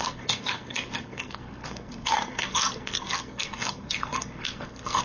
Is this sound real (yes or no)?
no